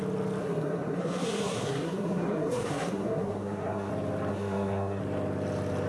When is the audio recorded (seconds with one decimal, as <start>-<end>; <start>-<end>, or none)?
0.0-0.4; 3.9-4.3; 5.0-5.9